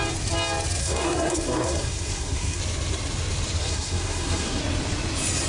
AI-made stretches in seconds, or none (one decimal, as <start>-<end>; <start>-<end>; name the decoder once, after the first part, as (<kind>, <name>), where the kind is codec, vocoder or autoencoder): 0.8-2.6 (codec, SNAC); 3.6-4.6